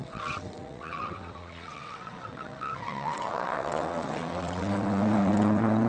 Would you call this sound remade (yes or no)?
yes